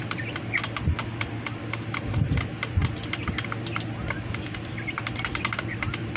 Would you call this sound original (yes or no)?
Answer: yes